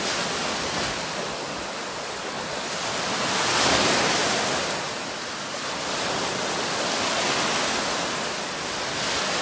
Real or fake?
real